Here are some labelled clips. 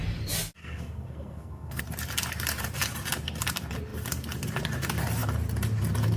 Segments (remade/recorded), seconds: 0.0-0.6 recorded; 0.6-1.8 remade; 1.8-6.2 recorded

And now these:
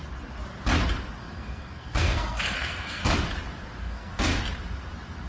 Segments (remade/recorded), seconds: 0.0-1.2 recorded; 1.2-3.0 remade; 3.0-3.8 recorded; 3.8-4.3 remade; 4.3-5.3 recorded

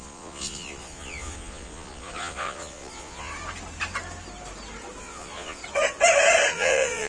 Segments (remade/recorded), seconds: 0.0-3.3 remade; 3.3-5.0 recorded; 5.0-5.6 remade; 5.6-6.5 recorded; 6.5-7.1 remade

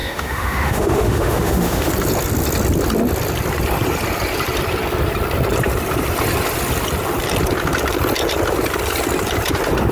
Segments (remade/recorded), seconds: 0.0-1.9 remade; 1.9-9.9 recorded

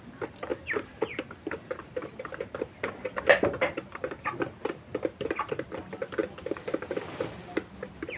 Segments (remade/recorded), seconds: 0.0-0.5 recorded; 0.5-5.3 remade; 5.3-8.2 recorded

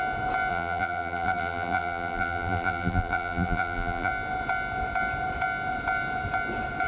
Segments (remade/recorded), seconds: 0.0-0.5 recorded; 0.5-4.1 remade; 4.1-6.9 recorded